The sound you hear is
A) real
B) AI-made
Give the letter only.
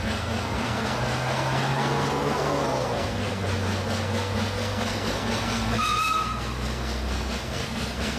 B